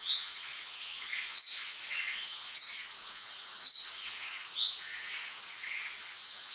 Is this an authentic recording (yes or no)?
no